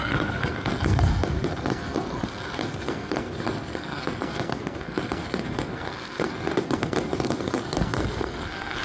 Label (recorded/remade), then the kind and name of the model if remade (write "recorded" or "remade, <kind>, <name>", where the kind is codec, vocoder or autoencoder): remade, codec, SNAC